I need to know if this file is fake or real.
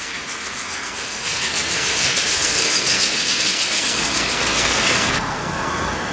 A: fake